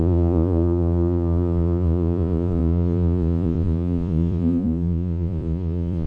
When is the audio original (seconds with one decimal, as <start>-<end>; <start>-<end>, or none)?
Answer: none